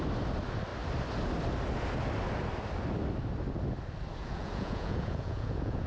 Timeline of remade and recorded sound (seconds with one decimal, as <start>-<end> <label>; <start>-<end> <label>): 0.0-4.2 recorded; 4.2-5.9 remade